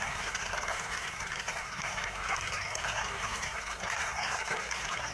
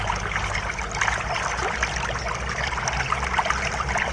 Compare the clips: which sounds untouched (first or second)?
second